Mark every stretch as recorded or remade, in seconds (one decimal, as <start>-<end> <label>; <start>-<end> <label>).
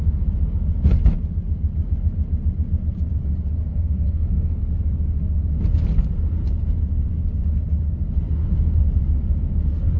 0.0-3.7 recorded; 3.7-4.6 remade; 4.6-10.0 recorded